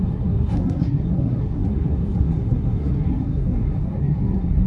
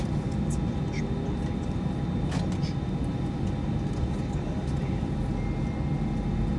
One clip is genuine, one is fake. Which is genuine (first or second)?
second